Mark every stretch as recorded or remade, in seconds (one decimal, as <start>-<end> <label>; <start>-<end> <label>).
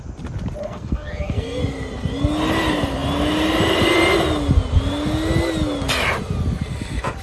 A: 0.0-0.6 recorded; 0.6-1.6 remade; 1.6-7.2 recorded